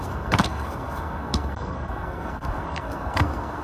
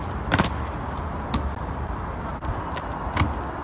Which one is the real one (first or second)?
second